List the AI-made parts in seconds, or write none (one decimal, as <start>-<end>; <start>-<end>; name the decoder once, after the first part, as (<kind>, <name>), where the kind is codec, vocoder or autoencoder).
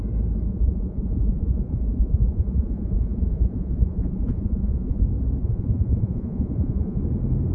0.5-5.0 (vocoder, Vocos); 5.4-7.0